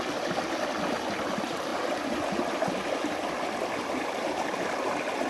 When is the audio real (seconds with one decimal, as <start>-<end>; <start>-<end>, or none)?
0.0-5.3